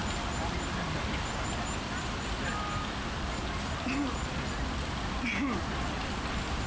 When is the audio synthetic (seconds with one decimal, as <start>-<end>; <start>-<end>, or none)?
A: none